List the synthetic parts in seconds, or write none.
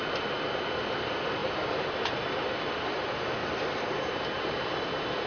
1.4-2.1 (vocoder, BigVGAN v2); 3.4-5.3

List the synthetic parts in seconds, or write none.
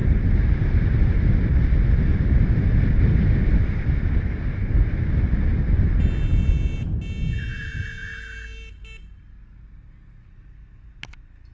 none